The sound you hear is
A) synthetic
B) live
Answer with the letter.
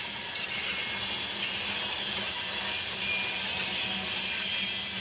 B